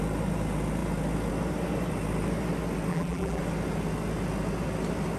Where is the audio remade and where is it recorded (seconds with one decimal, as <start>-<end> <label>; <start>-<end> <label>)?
0.0-2.9 recorded; 2.9-3.4 remade; 3.4-5.2 recorded